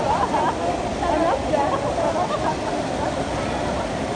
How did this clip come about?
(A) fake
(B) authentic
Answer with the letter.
B